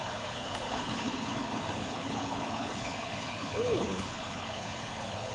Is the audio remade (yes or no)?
yes